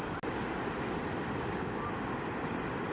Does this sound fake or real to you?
real